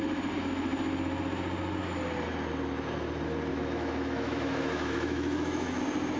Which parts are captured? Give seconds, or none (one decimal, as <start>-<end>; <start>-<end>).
0.0-3.5; 5.8-6.2